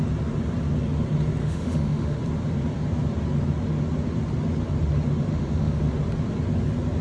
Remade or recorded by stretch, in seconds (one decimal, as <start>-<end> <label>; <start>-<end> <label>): 0.0-1.4 recorded; 1.4-2.2 remade; 2.2-5.3 recorded; 5.3-5.8 remade; 5.8-7.0 recorded